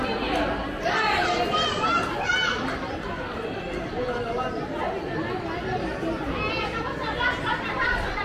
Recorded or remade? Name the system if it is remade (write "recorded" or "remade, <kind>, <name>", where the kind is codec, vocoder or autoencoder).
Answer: recorded